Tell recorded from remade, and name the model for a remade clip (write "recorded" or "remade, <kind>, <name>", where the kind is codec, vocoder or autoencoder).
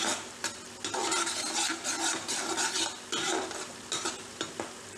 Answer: recorded